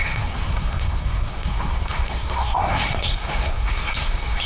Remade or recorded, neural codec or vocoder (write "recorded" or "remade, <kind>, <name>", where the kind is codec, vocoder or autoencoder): remade, codec, SNAC